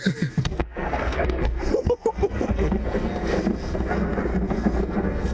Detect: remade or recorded remade